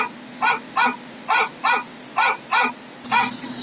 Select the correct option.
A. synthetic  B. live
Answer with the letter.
B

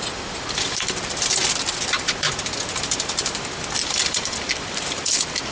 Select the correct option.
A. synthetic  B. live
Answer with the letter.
A